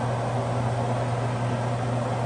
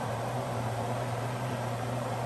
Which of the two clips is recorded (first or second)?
first